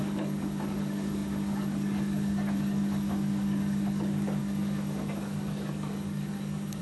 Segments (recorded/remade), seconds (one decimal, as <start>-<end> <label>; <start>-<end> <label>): 0.0-6.8 remade